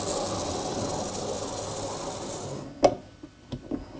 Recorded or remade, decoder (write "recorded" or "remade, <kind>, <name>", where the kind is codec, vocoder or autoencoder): recorded